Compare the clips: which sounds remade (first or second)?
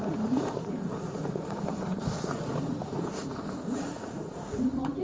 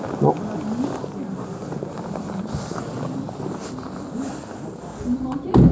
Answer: first